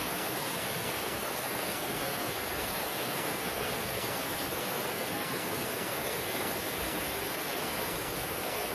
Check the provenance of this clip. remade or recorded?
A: remade